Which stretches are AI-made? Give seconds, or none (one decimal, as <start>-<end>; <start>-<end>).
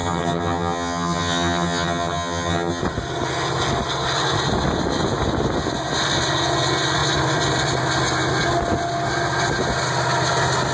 0.0-2.8